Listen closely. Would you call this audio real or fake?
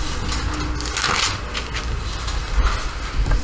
real